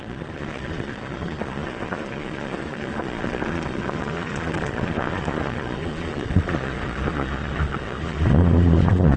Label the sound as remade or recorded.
remade